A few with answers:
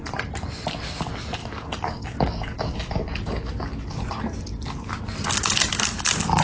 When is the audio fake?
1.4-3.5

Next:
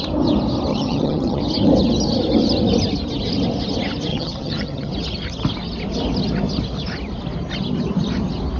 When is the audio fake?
0.7-1.4; 4.1-4.9